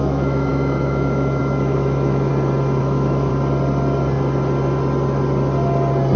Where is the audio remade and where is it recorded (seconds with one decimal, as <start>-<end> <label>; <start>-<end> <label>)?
0.0-2.3 remade; 2.3-2.8 recorded; 2.8-3.3 remade; 3.3-6.2 recorded